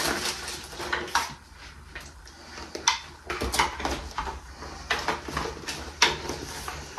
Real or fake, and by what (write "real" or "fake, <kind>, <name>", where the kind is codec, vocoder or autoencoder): real